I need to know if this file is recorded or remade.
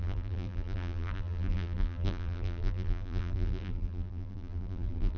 remade